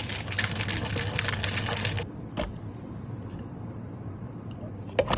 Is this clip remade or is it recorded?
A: recorded